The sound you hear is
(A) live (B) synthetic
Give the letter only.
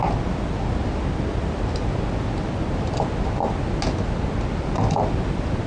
A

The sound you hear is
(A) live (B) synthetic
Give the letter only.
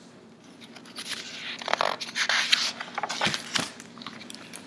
A